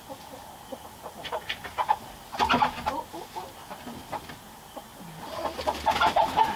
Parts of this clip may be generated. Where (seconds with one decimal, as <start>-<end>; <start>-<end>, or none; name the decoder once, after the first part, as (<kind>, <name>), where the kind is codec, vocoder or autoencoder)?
0.7-2.5 (vocoder, BigVGAN v2); 3.6-4.3